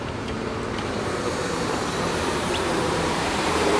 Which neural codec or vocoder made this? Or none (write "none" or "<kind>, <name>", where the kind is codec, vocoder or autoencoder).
vocoder, BigVGAN v2